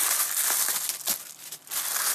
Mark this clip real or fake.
real